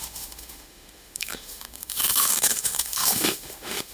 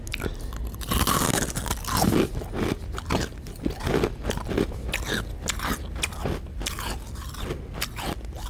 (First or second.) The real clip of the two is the second